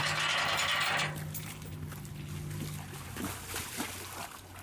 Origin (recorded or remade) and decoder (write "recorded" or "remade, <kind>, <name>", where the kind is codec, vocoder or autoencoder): recorded